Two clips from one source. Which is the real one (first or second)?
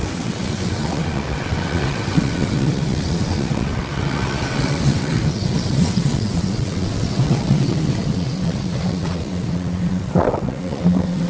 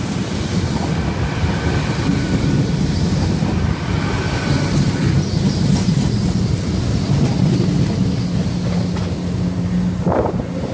second